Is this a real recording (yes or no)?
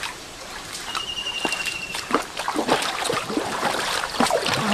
no